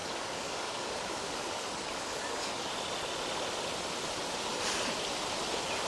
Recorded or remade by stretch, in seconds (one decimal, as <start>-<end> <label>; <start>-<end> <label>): 0.0-2.7 remade; 2.7-5.9 recorded